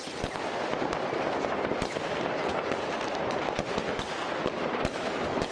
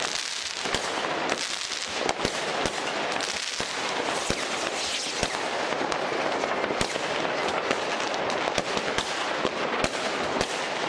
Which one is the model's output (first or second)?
first